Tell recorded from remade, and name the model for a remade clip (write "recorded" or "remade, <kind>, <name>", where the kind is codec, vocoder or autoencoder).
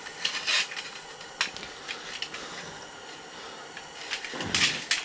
recorded